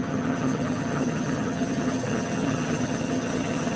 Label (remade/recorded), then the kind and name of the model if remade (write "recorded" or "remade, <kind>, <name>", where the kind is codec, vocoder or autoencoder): remade, vocoder, HiFi-GAN